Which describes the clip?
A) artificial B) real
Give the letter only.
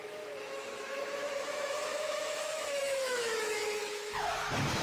A